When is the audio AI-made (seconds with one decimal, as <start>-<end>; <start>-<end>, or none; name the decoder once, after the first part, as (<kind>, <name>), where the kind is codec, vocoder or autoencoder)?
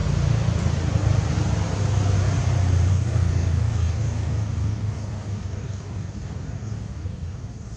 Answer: 2.9-7.8 (codec, DAC)